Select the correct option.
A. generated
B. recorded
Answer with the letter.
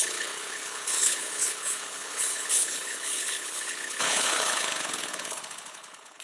A